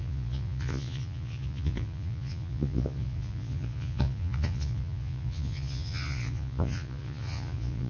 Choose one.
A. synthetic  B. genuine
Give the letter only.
A